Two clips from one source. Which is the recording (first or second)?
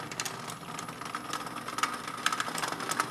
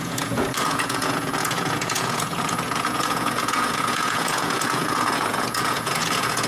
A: first